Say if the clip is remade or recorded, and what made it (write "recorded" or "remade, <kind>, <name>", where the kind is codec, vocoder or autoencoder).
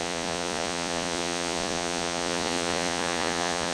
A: remade, vocoder, Vocos